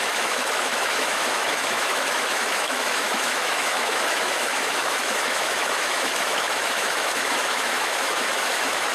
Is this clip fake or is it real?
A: fake